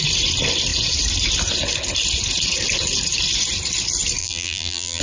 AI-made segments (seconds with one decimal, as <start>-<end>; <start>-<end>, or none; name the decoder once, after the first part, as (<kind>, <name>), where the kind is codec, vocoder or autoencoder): 4.2-5.0 (vocoder, BigVGAN v2)